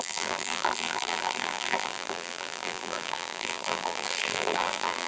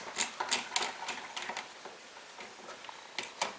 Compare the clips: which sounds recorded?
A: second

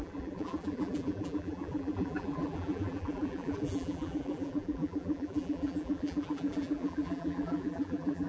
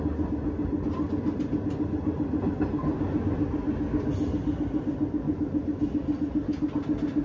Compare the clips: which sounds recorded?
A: second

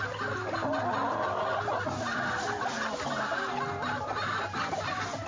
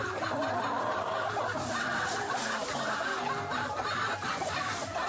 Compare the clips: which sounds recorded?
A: first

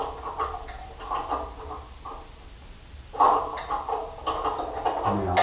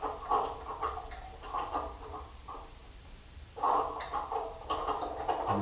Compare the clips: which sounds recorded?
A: first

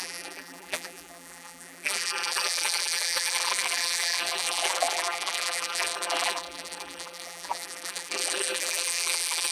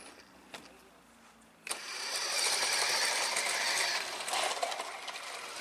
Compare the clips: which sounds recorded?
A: second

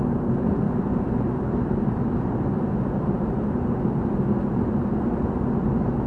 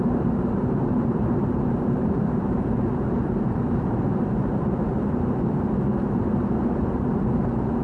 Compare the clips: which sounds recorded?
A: first